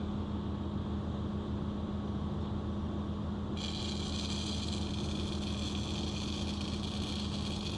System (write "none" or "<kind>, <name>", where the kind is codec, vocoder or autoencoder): none